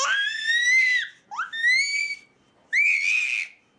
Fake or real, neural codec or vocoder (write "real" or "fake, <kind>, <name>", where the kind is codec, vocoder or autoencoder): real